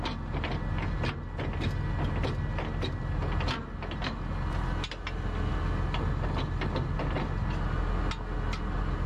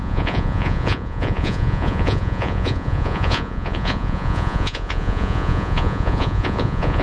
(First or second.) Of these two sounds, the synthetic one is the second